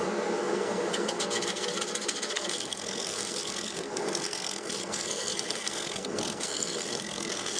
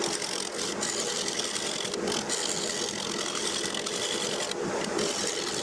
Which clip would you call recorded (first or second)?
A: second